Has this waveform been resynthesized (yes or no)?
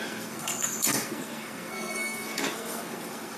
yes